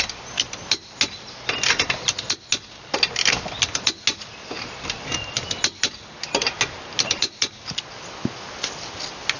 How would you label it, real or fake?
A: real